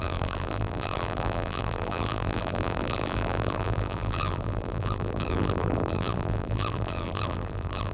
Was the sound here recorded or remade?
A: remade